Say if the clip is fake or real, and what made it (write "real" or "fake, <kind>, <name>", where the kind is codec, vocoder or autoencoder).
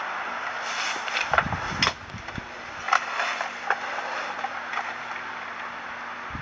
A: real